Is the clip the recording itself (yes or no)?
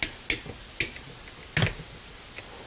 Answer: yes